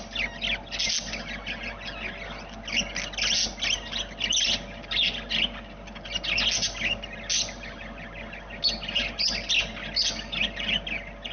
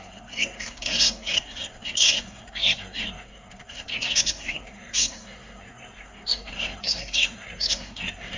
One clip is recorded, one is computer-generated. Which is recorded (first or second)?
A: first